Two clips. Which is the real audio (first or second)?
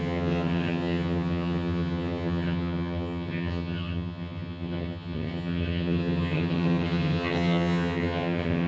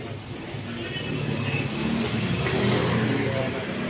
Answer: second